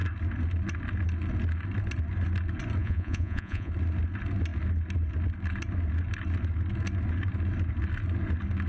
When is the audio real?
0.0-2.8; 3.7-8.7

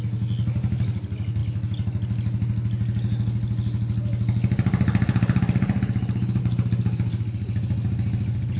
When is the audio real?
0.0-8.6

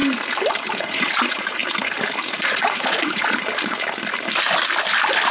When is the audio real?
0.0-0.8; 1.6-2.4; 3.4-5.3

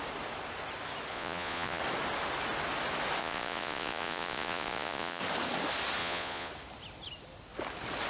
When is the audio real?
0.0-1.1; 1.8-3.2; 5.2-6.0; 6.5-8.1

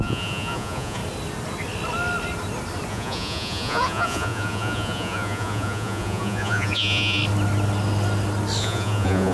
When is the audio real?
1.0-2.9; 7.2-8.6

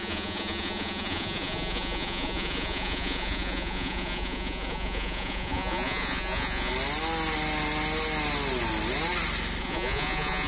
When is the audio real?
6.7-9.6

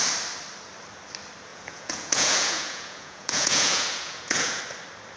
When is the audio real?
0.0-1.5; 4.6-5.2

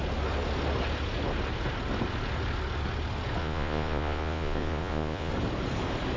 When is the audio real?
0.0-3.4; 5.3-6.2